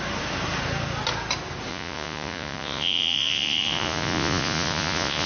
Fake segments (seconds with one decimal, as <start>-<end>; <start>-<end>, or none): 1.7-5.3